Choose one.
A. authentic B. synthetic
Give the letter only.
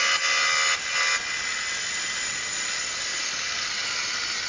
A